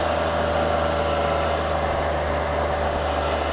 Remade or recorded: recorded